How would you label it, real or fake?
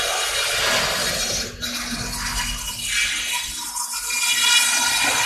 real